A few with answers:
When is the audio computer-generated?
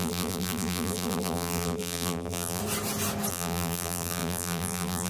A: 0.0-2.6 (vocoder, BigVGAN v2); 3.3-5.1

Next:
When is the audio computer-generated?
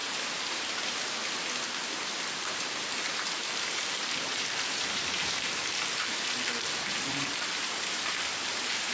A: 2.5-8.9 (vocoder, BigVGAN v2)